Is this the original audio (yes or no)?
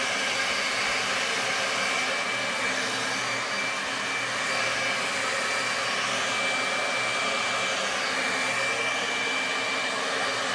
yes